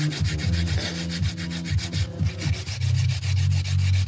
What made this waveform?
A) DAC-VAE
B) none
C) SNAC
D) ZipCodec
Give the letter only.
B